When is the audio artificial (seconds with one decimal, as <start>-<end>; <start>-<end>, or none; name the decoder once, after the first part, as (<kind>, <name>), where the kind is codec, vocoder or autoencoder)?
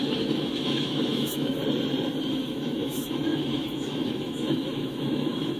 0.0-1.6 (autoencoder, DAC-VAE); 2.3-5.6